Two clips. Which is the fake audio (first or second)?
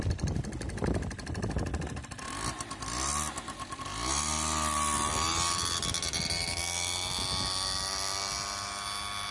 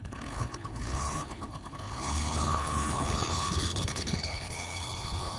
second